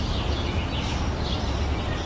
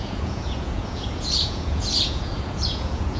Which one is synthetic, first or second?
second